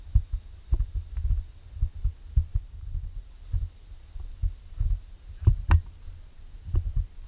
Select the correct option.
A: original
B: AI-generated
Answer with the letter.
A